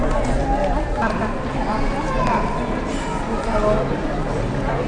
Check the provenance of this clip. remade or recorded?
recorded